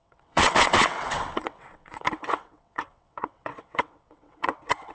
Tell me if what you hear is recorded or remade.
remade